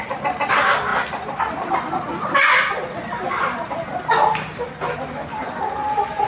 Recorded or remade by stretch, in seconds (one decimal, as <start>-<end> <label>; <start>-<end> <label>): 0.0-6.3 recorded